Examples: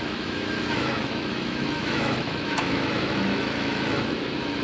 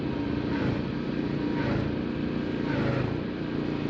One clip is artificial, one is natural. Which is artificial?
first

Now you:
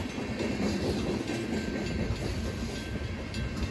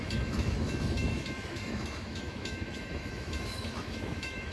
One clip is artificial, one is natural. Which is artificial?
second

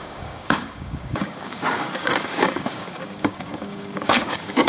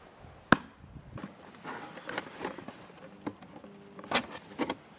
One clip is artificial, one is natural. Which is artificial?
first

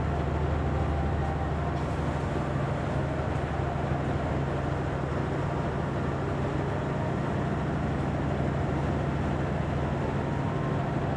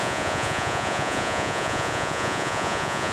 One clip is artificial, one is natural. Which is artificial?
second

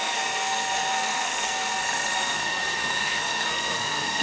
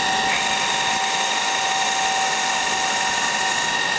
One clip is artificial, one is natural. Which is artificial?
first